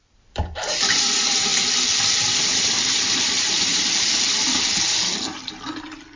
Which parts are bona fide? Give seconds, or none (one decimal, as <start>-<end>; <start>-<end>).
1.5-2.4; 3.7-5.6